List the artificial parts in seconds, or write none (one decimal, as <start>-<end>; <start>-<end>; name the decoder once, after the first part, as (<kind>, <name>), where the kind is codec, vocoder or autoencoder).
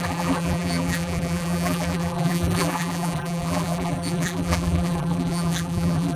0.0-6.2 (vocoder, BigVGAN v2)